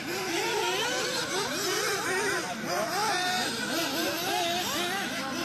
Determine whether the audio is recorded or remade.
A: recorded